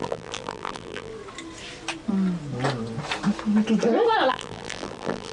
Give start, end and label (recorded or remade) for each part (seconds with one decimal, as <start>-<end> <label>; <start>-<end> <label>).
0.0-1.1 remade; 1.1-4.3 recorded; 4.3-5.3 remade